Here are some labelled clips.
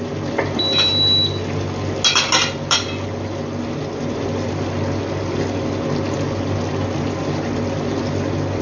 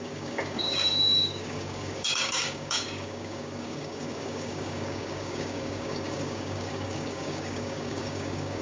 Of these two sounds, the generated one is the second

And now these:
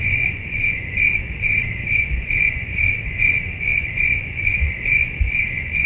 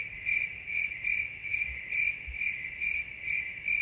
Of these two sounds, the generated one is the first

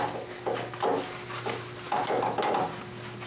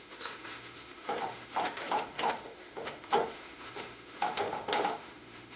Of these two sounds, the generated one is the second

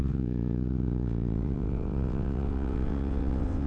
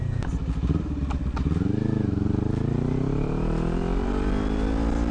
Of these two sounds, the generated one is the first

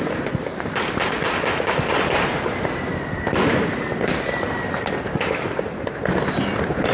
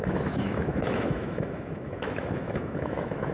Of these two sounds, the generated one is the second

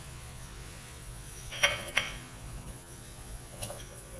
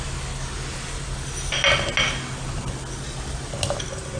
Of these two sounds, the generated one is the first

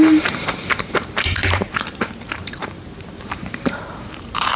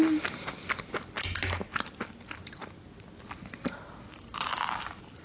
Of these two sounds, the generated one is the first